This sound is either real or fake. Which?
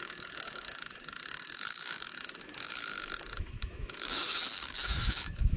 fake